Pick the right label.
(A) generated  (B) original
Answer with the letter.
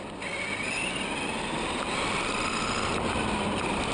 B